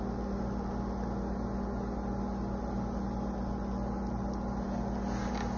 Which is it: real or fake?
real